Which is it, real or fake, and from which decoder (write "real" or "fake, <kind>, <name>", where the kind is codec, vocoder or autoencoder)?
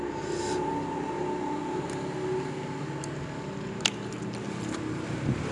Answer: real